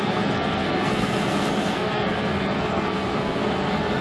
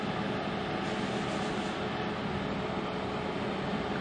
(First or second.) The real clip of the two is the second